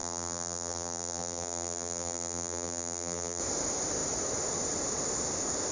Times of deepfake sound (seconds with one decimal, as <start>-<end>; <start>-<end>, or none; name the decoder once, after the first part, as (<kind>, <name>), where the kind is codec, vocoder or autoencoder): 0.0-3.4 (vocoder, BigVGAN v2)

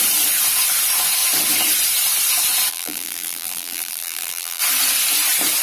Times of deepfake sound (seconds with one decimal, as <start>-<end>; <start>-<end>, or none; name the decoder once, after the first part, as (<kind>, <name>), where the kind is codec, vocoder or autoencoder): 2.7-4.6 (vocoder, BigVGAN v2)

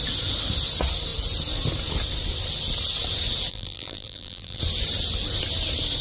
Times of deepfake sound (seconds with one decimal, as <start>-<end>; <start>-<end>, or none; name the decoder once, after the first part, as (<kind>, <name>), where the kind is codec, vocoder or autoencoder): 3.5-4.6 (vocoder, BigVGAN v2)

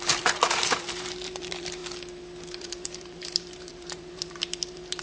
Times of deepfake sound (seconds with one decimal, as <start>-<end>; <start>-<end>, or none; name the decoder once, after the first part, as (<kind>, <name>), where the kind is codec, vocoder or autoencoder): 0.0-1.8 (vocoder, BigVGAN v2); 2.6-5.0

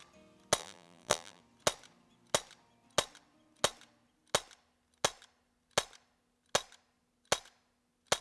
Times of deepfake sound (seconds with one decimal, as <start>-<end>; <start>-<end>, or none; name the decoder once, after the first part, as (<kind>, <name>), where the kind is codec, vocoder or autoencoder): 0.6-1.4 (vocoder, BigVGAN v2)

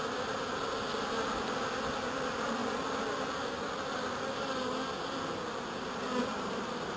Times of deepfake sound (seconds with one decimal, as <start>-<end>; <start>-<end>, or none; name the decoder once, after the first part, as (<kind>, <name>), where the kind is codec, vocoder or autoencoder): 1.9-2.6 (vocoder, BigVGAN v2); 6.2-7.0

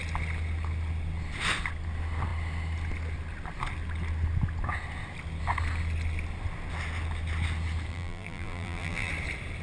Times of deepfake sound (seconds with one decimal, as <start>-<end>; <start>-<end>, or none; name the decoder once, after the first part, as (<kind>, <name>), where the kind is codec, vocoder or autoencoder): 7.9-9.1 (vocoder, BigVGAN v2)